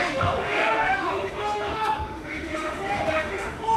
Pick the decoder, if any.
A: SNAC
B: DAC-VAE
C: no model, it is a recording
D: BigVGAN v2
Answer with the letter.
B